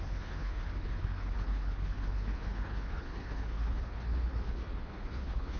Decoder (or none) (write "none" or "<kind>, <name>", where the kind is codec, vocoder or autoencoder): codec, HILCodec